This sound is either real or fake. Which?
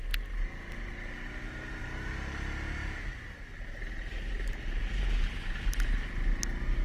real